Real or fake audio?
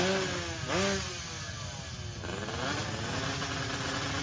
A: real